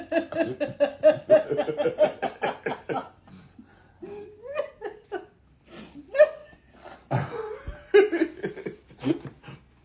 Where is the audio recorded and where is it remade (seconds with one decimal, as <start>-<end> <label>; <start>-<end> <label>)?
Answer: 0.0-9.8 recorded